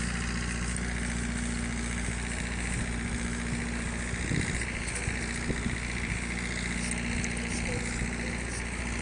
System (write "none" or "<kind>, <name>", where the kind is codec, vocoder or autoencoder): none